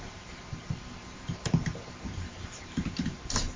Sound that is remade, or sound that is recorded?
remade